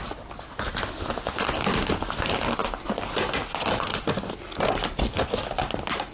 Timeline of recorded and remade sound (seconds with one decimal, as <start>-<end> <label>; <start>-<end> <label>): 0.0-6.1 recorded

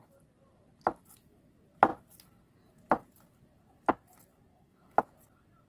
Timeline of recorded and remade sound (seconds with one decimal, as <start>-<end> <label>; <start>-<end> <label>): 0.0-4.5 recorded; 4.5-5.0 remade; 5.0-5.7 recorded